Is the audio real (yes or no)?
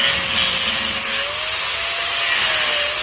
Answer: yes